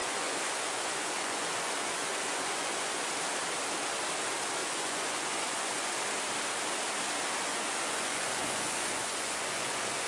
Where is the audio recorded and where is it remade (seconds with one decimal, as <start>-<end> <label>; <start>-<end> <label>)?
0.0-3.1 remade; 3.1-4.6 recorded; 4.6-6.0 remade; 6.0-7.5 recorded; 7.5-10.1 remade

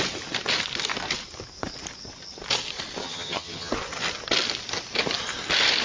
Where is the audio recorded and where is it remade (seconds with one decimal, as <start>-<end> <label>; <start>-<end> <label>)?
0.0-3.0 recorded; 3.0-3.7 remade; 3.7-5.8 recorded

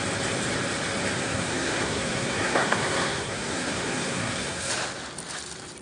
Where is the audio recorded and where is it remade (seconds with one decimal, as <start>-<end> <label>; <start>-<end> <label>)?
0.0-1.2 recorded; 1.2-4.7 remade; 4.7-5.8 recorded

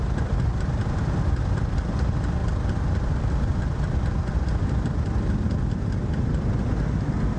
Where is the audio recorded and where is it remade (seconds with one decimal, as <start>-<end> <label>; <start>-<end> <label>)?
0.0-7.4 recorded

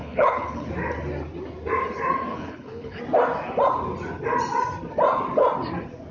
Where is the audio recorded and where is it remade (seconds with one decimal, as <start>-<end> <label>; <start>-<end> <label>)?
0.0-0.7 remade; 0.7-2.3 recorded; 2.3-3.0 remade; 3.0-6.1 recorded

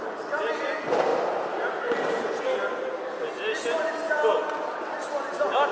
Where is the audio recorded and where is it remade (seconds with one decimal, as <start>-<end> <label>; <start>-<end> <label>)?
0.0-1.1 recorded; 1.1-2.3 remade; 2.3-5.7 recorded

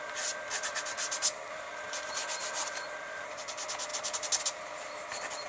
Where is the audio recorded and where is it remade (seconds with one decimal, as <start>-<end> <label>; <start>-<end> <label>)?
0.0-2.4 recorded; 2.4-3.5 remade; 3.5-3.9 recorded; 3.9-4.4 remade; 4.4-5.5 recorded

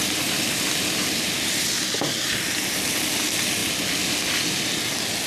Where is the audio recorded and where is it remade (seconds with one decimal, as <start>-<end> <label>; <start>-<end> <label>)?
0.0-5.3 recorded